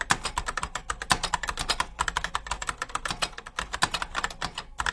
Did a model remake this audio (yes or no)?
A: no